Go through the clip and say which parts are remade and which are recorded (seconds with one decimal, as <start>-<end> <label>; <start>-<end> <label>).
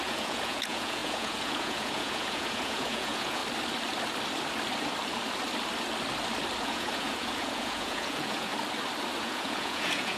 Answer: 0.0-3.4 remade; 3.4-6.6 recorded; 6.6-8.5 remade; 8.5-9.2 recorded; 9.2-10.2 remade